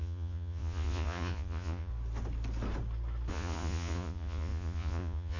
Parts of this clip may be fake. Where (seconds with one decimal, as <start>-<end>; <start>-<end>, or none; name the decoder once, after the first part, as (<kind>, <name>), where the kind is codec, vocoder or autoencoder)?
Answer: 0.0-1.9 (vocoder, Vocos); 3.3-5.4